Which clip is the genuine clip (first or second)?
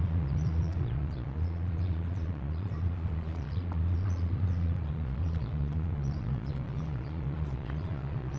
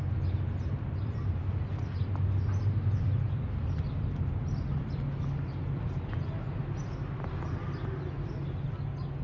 second